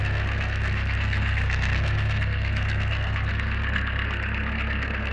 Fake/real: fake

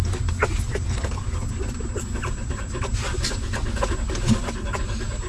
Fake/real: real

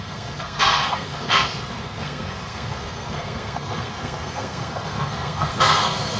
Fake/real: fake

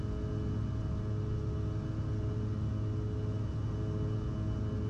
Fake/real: real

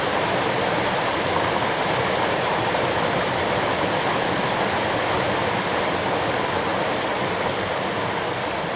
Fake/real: real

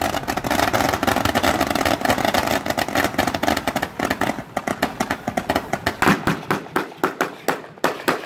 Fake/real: real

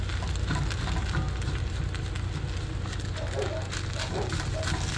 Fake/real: real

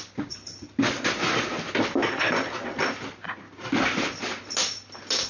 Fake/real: real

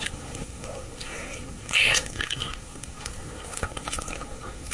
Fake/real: fake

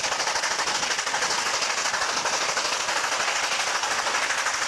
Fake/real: real